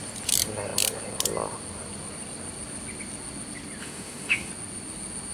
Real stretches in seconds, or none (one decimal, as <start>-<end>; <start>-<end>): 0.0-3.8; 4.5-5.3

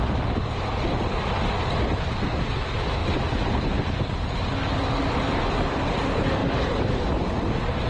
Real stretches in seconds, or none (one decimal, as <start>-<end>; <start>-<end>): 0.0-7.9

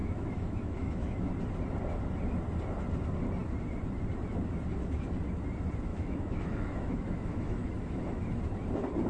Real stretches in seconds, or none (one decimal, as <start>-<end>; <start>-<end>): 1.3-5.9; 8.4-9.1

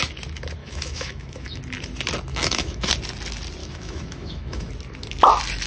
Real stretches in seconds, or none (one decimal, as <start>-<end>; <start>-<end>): 0.0-0.6; 1.6-2.3; 2.9-3.6; 4.7-5.7